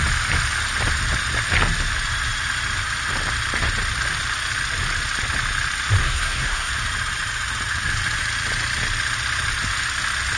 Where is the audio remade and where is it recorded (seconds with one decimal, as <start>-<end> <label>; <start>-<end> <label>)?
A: 0.0-6.0 recorded; 6.0-6.7 remade; 6.7-10.4 recorded